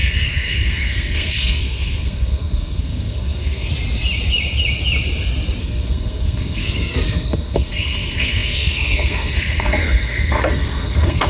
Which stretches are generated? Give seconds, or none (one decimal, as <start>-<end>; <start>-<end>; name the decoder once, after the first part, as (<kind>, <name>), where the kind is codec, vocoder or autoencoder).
0.0-3.7 (codec, SNAC); 5.6-11.3